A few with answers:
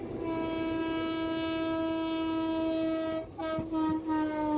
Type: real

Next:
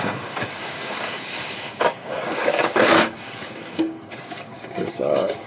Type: fake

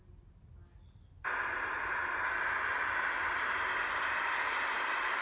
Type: real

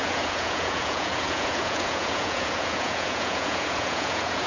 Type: fake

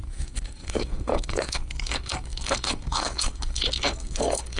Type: fake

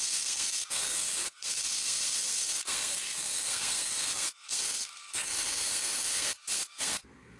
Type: fake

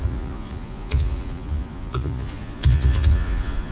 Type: fake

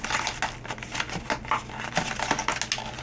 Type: real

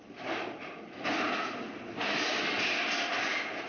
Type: real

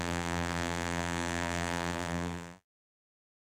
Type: fake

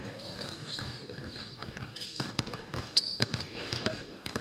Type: fake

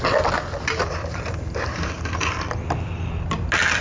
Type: real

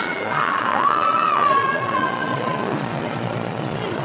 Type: fake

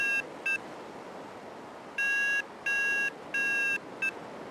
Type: real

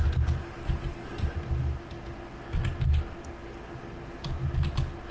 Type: real